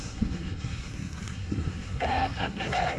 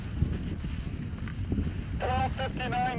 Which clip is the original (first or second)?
second